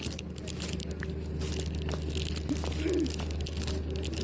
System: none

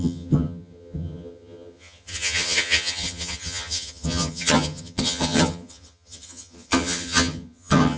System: vocoder, HiFi-GAN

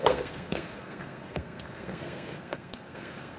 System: codec, SNAC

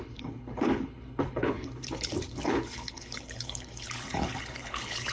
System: codec, HILCodec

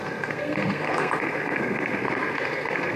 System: codec, SNAC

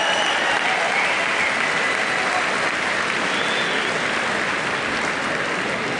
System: none